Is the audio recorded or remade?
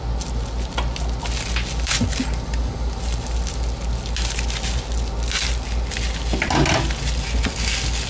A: recorded